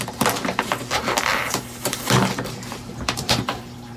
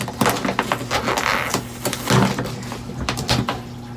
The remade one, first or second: first